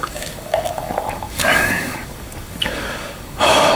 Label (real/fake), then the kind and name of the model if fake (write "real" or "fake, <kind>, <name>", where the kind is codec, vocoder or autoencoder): fake, codec, DAC